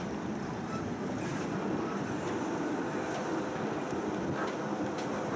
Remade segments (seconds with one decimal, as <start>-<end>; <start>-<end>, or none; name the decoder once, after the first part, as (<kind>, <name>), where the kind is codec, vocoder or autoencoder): none